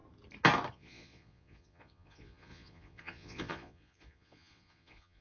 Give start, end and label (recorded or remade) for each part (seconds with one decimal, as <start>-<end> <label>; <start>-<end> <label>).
0.0-0.7 recorded; 0.7-5.2 remade